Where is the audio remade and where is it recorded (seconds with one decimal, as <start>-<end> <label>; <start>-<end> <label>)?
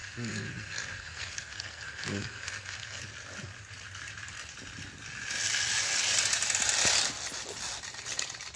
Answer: 0.0-3.0 remade; 3.0-8.6 recorded